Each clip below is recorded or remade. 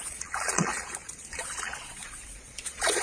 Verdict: remade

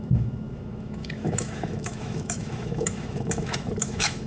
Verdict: remade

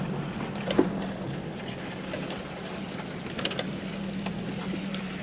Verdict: recorded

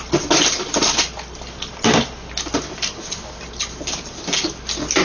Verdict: recorded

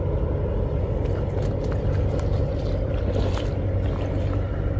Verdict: recorded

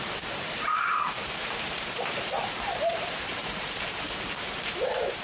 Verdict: remade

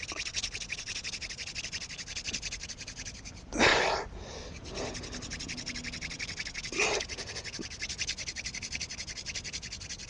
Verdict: recorded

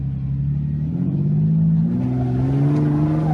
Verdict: recorded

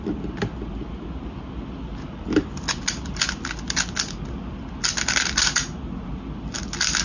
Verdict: recorded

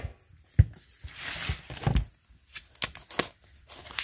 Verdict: recorded